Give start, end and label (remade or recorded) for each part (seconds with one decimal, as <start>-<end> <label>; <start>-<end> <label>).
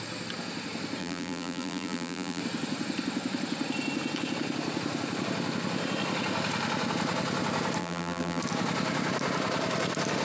0.0-1.0 recorded; 1.0-2.4 remade; 2.4-7.8 recorded; 7.8-8.4 remade; 8.4-10.2 recorded